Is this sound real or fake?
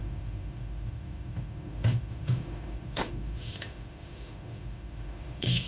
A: fake